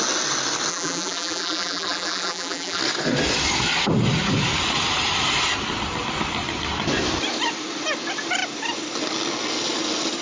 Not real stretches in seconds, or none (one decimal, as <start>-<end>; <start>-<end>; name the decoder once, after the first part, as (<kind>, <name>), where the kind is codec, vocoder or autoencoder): 0.7-2.8 (vocoder, BigVGAN v2)